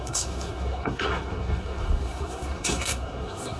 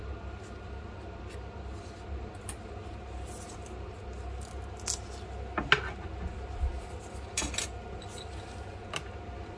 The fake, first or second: first